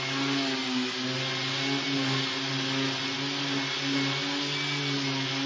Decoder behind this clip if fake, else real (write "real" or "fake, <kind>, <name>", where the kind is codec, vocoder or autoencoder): real